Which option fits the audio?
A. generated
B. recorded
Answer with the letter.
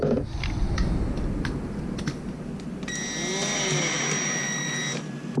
B